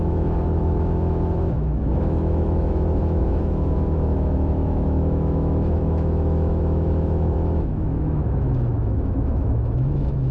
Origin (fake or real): fake